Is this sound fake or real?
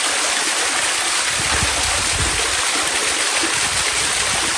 real